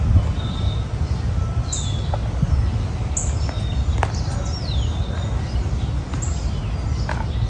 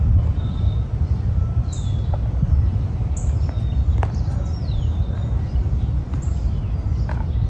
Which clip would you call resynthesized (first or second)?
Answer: second